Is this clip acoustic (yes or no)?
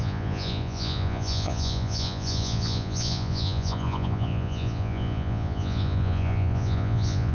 no